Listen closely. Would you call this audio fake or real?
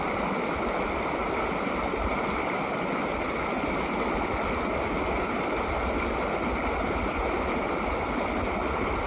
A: real